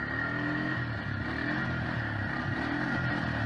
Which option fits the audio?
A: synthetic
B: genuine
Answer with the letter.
B